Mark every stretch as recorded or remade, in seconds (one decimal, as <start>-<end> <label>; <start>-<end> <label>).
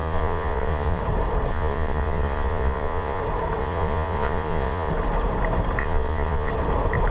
0.0-1.0 remade; 1.0-1.5 recorded; 1.5-3.2 remade; 3.2-3.6 recorded; 3.6-4.9 remade; 4.9-5.8 recorded; 5.8-6.5 remade; 6.5-7.1 recorded